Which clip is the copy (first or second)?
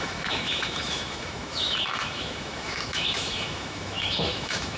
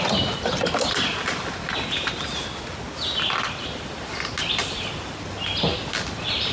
first